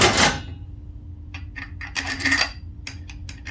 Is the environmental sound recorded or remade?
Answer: recorded